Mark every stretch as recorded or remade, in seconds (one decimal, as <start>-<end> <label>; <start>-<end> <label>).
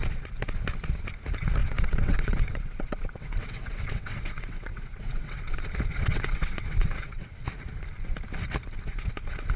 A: 0.0-1.6 recorded; 1.6-5.4 remade; 5.4-5.9 recorded; 5.9-7.3 remade; 7.3-9.6 recorded